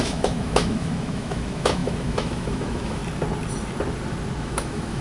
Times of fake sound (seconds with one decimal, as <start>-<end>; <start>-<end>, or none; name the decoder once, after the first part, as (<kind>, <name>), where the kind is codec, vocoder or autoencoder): 0.0-3.0 (autoencoder, DAC-VAE); 4.4-5.0